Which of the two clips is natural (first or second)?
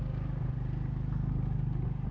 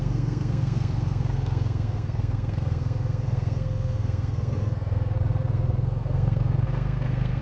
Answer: first